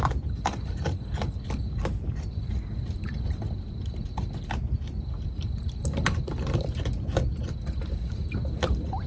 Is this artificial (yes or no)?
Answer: no